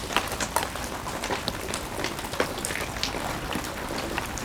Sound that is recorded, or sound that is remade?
recorded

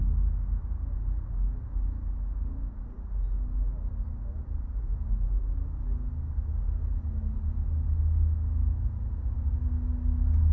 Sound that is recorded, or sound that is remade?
recorded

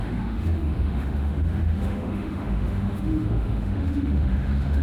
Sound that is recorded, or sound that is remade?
remade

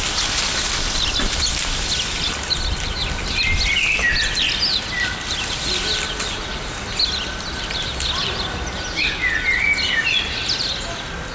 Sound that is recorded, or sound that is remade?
recorded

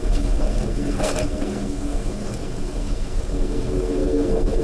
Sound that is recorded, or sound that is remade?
remade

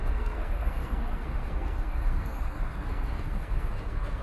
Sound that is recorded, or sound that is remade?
remade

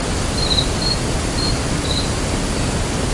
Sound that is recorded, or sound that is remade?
recorded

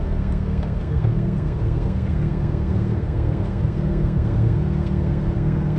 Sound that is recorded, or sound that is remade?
remade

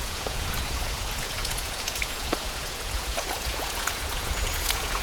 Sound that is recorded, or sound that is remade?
remade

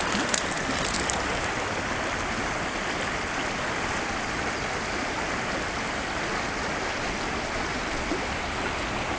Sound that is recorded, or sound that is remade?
recorded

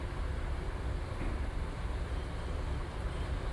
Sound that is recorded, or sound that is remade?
remade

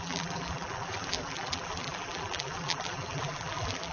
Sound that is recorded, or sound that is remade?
remade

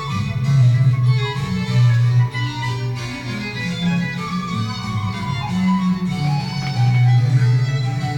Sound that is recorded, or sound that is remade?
recorded